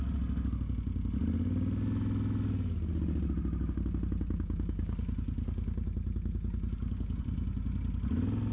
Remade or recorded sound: recorded